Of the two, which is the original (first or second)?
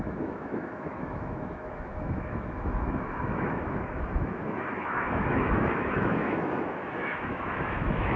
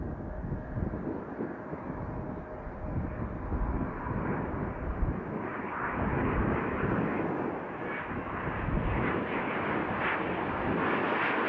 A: second